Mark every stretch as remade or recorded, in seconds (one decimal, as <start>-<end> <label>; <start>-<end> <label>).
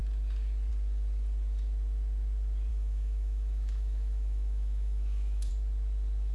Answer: 0.0-2.7 recorded; 2.7-5.5 remade; 5.5-6.3 recorded